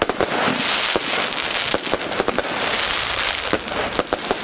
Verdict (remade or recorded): recorded